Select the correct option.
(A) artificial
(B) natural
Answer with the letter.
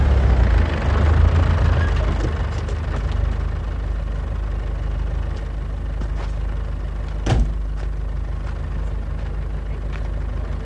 B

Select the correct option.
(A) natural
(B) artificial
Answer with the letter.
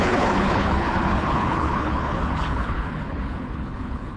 B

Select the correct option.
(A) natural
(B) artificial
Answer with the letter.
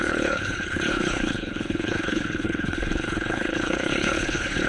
B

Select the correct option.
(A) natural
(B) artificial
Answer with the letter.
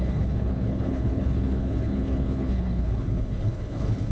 B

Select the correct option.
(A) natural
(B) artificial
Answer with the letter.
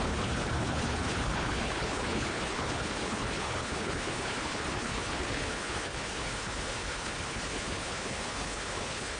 B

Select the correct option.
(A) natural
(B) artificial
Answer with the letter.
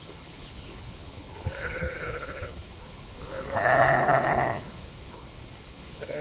B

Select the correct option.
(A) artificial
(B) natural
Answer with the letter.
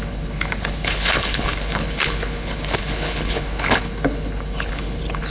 A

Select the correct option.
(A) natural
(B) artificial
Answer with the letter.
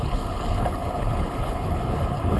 B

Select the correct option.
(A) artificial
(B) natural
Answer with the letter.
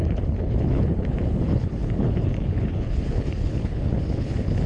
A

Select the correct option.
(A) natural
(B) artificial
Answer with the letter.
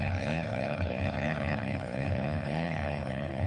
B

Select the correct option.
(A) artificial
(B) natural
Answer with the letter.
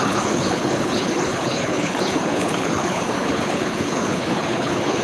A